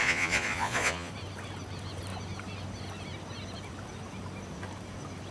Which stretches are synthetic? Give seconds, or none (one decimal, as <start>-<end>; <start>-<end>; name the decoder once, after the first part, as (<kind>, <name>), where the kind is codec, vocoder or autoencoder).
0.0-1.1 (vocoder, Vocos)